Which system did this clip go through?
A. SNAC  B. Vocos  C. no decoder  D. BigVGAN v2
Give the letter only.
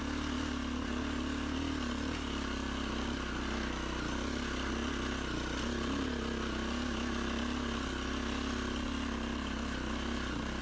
C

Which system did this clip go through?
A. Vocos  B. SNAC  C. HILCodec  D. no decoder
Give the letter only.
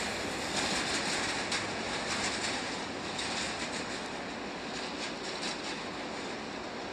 D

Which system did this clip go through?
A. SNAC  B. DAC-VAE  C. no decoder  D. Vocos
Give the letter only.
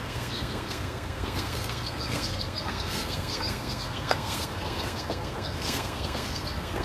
A